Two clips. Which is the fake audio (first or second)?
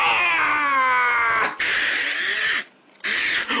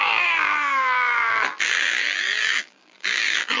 second